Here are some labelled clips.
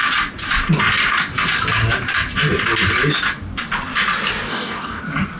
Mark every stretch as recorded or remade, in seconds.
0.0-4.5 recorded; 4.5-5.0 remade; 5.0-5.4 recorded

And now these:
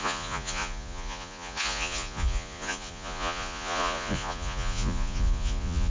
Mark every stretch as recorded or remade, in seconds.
0.0-5.9 remade